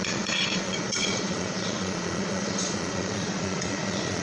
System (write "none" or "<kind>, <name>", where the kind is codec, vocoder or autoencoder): vocoder, Vocos